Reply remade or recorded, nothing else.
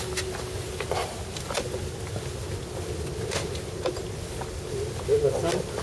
recorded